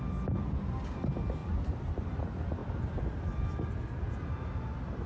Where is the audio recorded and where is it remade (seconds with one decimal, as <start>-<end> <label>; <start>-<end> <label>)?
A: 0.0-5.1 recorded